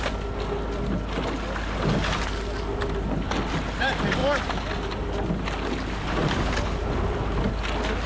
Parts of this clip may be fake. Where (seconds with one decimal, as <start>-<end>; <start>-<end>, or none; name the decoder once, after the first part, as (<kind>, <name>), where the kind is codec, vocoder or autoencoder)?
none